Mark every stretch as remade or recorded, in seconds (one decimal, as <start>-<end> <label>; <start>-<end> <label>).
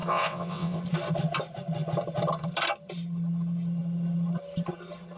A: 0.0-0.8 remade; 0.8-5.2 recorded